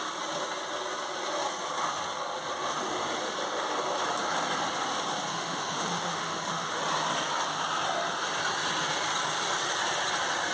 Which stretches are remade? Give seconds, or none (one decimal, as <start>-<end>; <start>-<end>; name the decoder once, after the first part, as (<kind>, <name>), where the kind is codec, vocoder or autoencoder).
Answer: 5.3-6.8 (autoencoder, DAC-VAE)

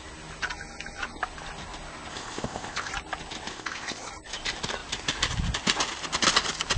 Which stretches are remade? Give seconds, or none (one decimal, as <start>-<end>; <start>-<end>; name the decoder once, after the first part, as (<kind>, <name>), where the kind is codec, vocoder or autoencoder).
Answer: 2.1-2.9 (codec, ZipCodec); 3.5-4.1

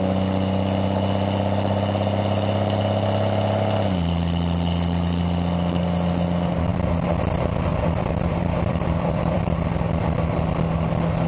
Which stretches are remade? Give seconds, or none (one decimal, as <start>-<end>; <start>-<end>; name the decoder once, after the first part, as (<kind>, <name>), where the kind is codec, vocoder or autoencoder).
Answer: 6.7-7.2 (vocoder, BigVGAN v2); 7.7-9.4

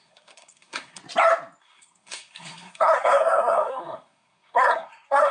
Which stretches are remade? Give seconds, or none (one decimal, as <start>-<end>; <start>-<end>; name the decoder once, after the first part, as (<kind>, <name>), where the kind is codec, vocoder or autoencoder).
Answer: 0.0-1.0 (codec, SNAC); 1.6-5.3

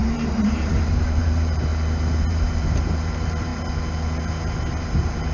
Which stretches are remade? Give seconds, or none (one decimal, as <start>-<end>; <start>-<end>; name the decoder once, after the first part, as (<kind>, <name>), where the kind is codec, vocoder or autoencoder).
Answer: 0.0-1.7 (vocoder, BigVGAN v2); 2.2-3.5; 4.2-5.3

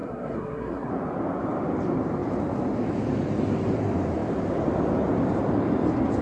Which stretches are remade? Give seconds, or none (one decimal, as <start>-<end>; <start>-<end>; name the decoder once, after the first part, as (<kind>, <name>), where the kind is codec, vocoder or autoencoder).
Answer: 0.0-0.9 (codec, SNAC)

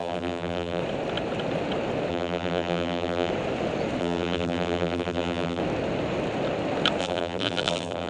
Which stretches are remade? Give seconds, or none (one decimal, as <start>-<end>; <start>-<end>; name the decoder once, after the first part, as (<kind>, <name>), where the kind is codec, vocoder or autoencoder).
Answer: 0.0-0.8 (vocoder, BigVGAN v2); 2.1-3.3; 4.0-5.6; 7.0-8.1

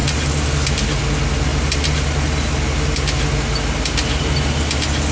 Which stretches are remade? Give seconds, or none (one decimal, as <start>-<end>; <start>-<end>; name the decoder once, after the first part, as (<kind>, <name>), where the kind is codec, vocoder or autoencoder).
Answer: none